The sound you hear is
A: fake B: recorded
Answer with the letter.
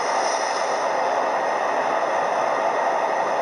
B